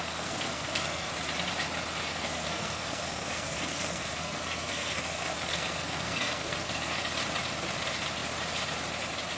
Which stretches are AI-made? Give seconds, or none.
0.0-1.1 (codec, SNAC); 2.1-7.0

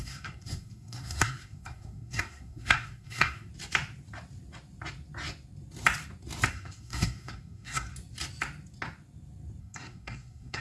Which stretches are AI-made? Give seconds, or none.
0.0-3.5 (codec, SNAC); 6.5-7.9; 9.6-10.6